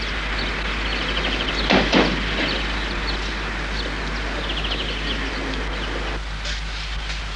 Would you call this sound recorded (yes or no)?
yes